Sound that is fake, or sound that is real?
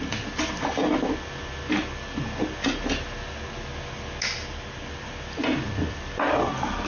real